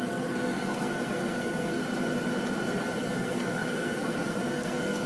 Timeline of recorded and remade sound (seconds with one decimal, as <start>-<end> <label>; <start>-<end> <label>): 0.0-1.8 remade; 1.8-3.0 recorded; 3.0-5.1 remade